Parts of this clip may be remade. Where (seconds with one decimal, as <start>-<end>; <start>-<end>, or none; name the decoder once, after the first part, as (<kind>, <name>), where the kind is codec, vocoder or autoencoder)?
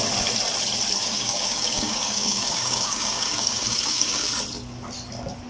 1.0-4.3 (codec, DAC)